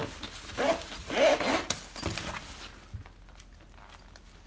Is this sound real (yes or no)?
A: yes